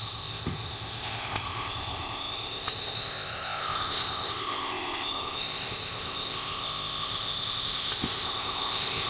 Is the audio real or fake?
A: fake